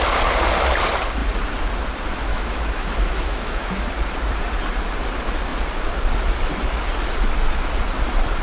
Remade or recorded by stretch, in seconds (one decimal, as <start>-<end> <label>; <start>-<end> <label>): 0.0-2.3 recorded; 2.3-3.9 remade; 3.9-8.4 recorded